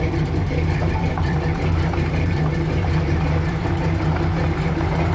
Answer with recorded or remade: remade